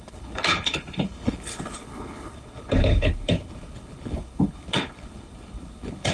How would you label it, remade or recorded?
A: remade